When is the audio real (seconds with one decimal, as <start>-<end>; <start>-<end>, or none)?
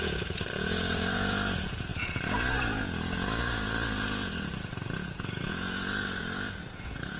none